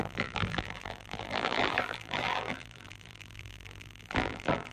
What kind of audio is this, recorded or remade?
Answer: remade